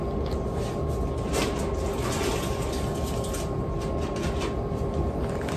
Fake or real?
real